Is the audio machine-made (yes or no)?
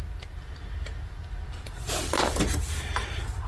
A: no